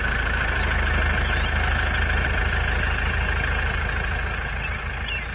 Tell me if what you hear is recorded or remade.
recorded